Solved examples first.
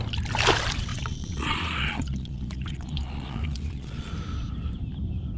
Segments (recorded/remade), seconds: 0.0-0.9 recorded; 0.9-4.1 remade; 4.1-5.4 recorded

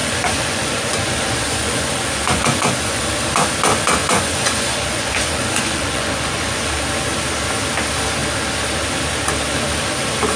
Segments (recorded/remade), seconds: 0.0-3.0 remade; 3.0-4.0 recorded; 4.0-6.7 remade; 6.7-10.4 recorded

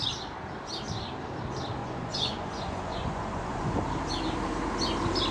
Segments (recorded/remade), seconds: 0.0-1.8 recorded; 1.8-3.8 remade; 3.8-5.3 recorded

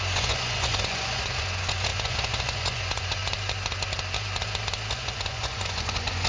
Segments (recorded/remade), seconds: 0.0-3.2 remade; 3.2-4.9 recorded; 4.9-6.3 remade

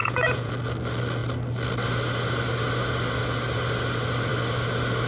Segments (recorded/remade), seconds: 0.0-0.5 remade; 0.5-5.1 recorded

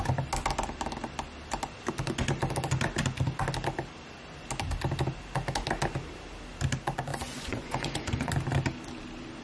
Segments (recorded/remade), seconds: 0.0-7.1 recorded; 7.1-8.3 remade; 8.3-9.4 recorded